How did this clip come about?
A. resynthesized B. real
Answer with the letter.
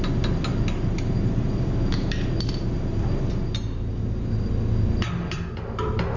B